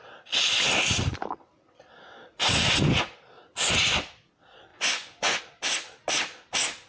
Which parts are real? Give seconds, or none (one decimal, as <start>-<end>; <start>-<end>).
0.0-4.7; 5.4-6.9